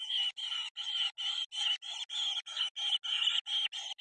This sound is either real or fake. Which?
real